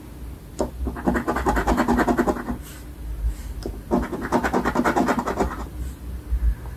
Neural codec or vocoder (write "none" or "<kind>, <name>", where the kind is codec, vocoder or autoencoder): none